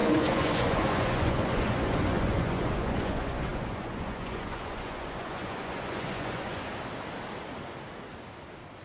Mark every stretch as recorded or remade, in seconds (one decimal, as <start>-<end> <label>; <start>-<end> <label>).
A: 0.0-6.7 remade; 6.7-8.8 recorded